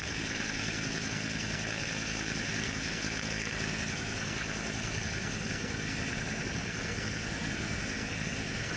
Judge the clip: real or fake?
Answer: fake